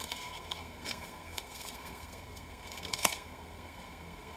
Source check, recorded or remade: remade